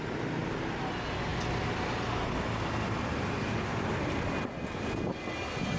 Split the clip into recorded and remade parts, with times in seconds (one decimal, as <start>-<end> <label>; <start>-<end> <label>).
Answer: 0.0-5.8 recorded